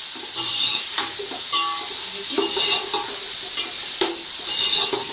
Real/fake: real